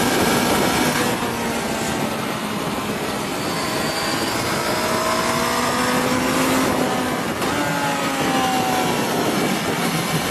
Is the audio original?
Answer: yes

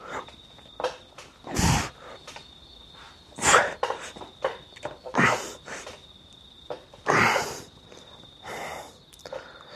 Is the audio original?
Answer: yes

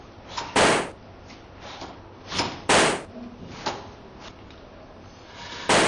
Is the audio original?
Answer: yes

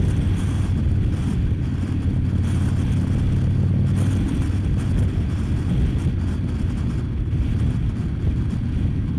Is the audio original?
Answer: yes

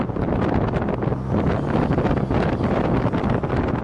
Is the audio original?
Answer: yes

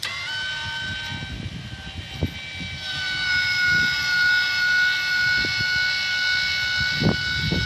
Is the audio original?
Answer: yes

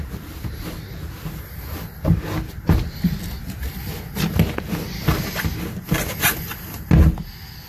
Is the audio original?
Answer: yes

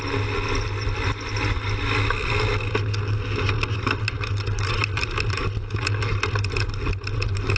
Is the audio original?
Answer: yes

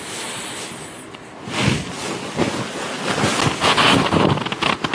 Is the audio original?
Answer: yes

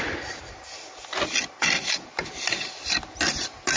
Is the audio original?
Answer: yes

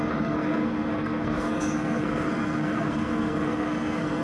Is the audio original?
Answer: no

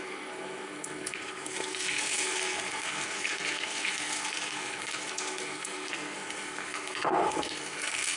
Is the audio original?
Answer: no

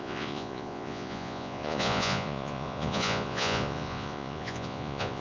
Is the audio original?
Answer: no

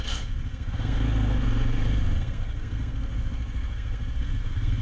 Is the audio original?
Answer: no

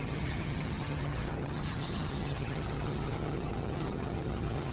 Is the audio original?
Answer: no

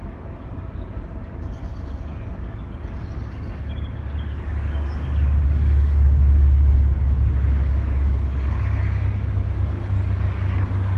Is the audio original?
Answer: no